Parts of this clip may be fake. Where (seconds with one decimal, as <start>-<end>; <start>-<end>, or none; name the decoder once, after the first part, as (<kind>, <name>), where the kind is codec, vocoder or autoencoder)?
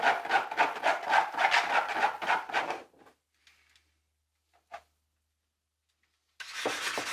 none